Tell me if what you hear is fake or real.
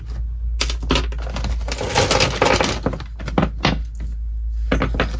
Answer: real